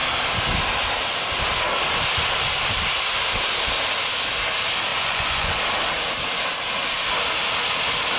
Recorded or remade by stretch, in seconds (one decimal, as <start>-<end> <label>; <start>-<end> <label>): 0.0-4.9 recorded; 4.9-5.6 remade; 5.6-8.2 recorded